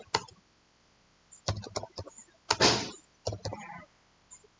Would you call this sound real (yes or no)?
yes